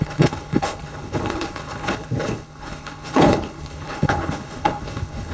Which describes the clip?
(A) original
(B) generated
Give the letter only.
B